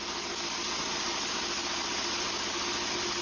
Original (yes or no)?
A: yes